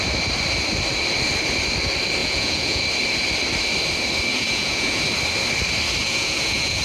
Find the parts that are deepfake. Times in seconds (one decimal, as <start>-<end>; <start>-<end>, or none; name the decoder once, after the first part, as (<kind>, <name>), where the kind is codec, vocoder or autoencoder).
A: 2.2-2.8 (vocoder, Vocos); 4.3-5.0; 6.0-6.8